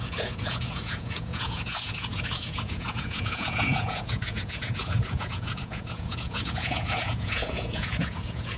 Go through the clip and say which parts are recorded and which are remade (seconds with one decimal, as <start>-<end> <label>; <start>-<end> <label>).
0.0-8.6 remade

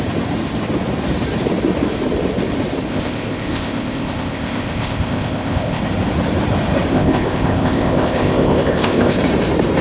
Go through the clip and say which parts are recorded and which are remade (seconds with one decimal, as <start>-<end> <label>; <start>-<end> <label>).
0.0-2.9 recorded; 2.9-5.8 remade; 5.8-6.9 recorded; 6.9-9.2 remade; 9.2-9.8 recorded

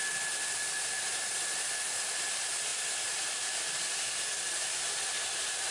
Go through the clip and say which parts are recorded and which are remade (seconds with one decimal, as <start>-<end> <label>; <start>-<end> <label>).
0.0-5.7 recorded

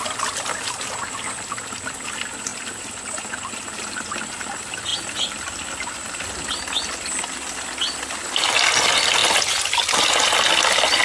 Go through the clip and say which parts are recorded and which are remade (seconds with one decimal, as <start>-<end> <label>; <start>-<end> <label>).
0.0-11.0 recorded

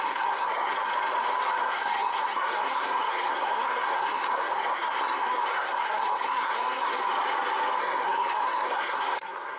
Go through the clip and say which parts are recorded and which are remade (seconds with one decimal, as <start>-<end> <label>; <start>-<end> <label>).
0.0-0.7 remade; 0.7-1.6 recorded; 1.6-6.9 remade; 6.9-7.8 recorded; 7.8-9.6 remade

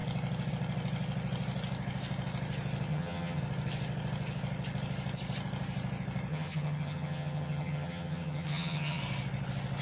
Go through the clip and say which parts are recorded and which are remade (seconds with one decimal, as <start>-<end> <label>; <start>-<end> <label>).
0.0-2.9 recorded; 2.9-3.4 remade; 3.4-6.3 recorded; 6.3-9.0 remade; 9.0-9.8 recorded